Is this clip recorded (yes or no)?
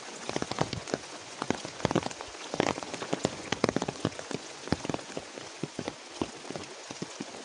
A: no